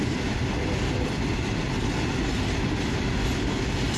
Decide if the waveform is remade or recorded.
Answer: recorded